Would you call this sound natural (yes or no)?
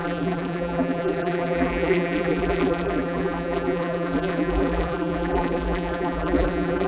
no